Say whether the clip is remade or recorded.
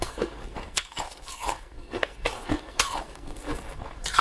remade